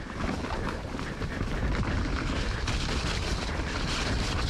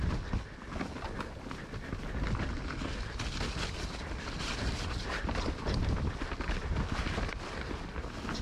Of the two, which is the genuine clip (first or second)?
second